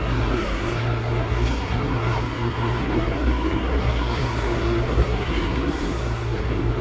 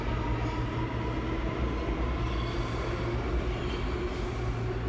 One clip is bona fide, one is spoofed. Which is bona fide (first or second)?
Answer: second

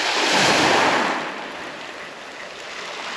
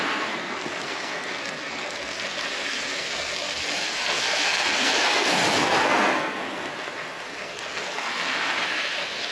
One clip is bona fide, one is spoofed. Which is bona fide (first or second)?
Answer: first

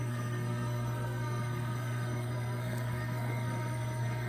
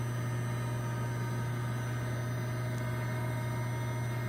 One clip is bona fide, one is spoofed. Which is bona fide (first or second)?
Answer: second